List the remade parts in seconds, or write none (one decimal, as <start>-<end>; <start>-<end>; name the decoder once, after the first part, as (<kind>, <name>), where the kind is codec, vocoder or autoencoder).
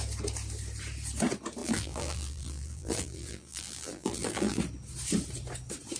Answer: 1.6-4.6 (vocoder, BigVGAN v2)